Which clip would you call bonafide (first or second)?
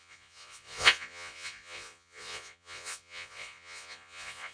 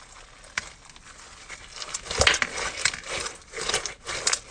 second